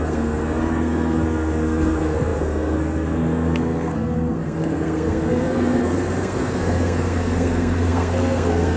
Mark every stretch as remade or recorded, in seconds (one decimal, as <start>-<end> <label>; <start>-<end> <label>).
0.0-8.8 remade